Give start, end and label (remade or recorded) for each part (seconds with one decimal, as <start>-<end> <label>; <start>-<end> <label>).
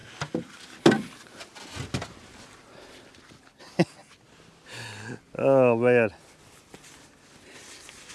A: 0.0-8.1 recorded